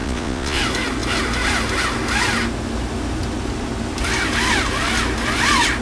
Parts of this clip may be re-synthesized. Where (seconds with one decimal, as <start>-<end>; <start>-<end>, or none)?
0.0-0.6